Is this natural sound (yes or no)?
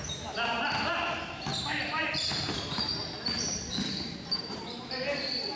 no